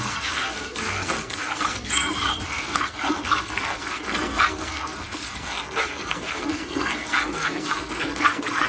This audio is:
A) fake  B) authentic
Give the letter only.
A